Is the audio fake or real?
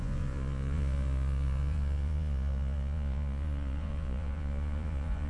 fake